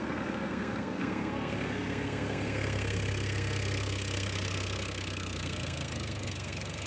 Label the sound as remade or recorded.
remade